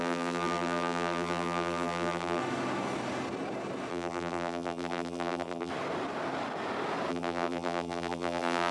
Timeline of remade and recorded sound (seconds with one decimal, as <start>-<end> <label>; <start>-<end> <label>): 0.0-2.4 remade; 2.4-3.9 recorded; 3.9-5.7 remade; 5.7-7.1 recorded; 7.1-8.7 remade